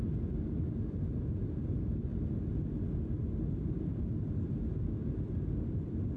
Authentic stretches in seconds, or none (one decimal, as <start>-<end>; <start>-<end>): 0.0-6.2